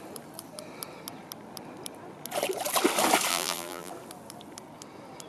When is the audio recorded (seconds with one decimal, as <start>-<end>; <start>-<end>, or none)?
0.0-3.3; 3.9-5.3